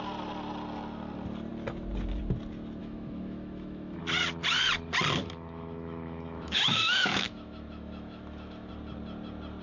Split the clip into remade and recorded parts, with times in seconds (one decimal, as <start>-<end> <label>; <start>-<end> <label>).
0.0-2.8 recorded; 2.8-4.0 remade; 4.0-5.2 recorded; 5.2-8.7 remade; 8.7-9.6 recorded